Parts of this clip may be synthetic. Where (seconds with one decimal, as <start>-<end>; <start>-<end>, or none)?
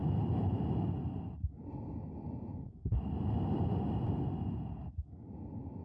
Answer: none